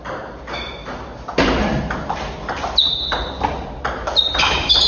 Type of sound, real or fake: real